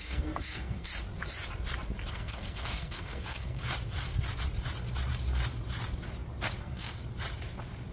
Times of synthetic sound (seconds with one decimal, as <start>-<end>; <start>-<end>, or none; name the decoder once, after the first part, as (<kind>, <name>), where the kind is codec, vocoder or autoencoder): 0.0-0.9 (codec, SNAC); 2.1-3.6; 6.6-7.0